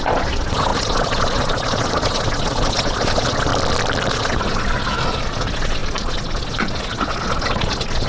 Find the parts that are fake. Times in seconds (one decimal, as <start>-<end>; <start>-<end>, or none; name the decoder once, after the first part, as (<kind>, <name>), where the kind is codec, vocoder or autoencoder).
0.0-3.5 (vocoder, Vocos); 4.1-8.1